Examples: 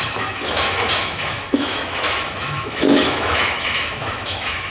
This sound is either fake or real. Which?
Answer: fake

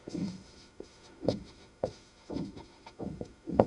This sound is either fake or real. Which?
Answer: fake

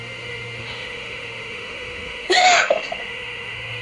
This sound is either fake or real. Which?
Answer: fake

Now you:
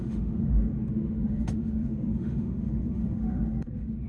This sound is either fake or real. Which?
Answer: fake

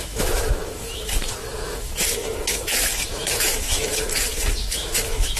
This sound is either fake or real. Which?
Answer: fake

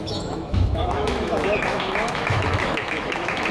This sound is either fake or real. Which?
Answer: fake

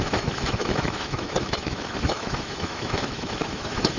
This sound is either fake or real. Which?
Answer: fake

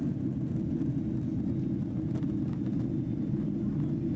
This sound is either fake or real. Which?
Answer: real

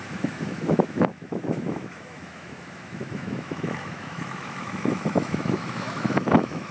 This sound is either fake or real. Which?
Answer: fake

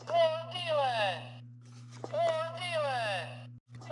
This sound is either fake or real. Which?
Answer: real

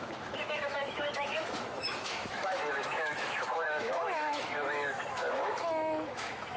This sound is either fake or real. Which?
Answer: fake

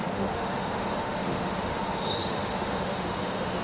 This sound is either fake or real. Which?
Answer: fake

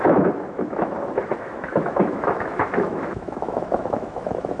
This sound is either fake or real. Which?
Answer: fake